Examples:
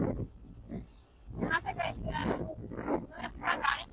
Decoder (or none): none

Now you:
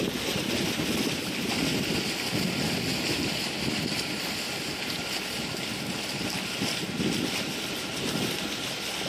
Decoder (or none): none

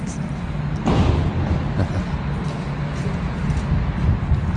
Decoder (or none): none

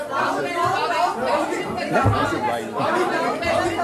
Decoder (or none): none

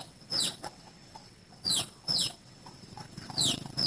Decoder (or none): vocoder, WaveNeXt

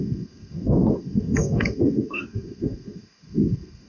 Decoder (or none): codec, SNAC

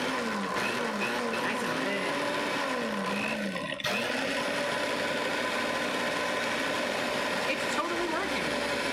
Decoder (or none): none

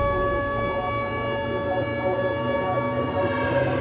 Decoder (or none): none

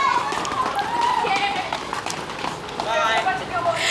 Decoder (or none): none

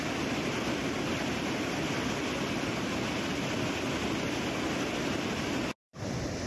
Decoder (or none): none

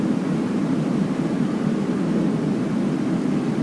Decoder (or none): none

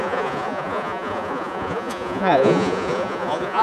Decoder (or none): vocoder, Vocos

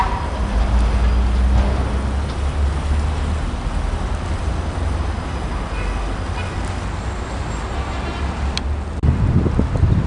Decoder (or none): none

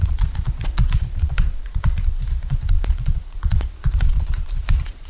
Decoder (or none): vocoder, Vocos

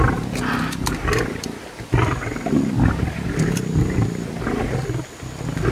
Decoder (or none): none